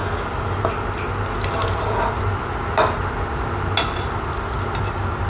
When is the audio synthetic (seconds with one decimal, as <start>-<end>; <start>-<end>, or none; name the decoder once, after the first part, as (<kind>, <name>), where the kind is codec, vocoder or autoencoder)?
none